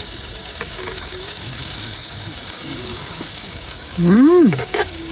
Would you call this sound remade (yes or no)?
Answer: yes